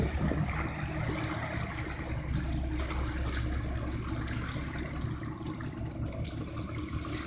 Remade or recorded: recorded